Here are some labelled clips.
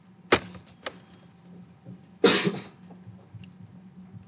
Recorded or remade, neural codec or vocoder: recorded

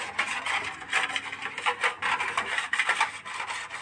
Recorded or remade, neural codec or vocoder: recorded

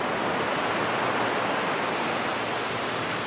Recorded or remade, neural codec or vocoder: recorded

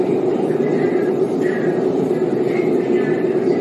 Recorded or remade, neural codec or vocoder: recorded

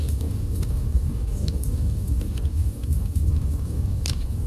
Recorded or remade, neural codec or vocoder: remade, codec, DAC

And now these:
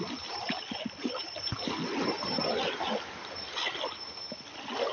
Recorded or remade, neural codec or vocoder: recorded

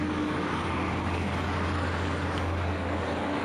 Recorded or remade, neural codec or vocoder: remade, codec, DAC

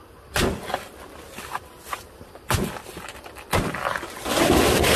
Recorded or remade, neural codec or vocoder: recorded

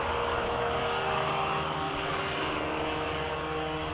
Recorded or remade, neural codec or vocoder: remade, codec, DAC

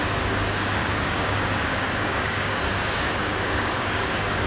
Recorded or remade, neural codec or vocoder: remade, codec, DAC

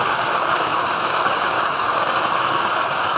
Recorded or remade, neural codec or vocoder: remade, codec, DAC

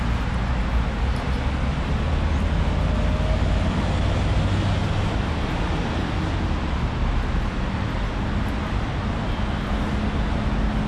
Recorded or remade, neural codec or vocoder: recorded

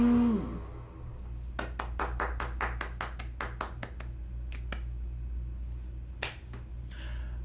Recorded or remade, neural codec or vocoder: recorded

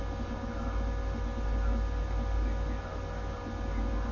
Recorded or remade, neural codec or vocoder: recorded